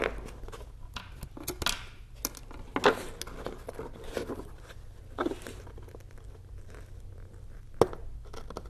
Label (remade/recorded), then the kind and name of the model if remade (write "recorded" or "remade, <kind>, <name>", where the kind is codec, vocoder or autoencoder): recorded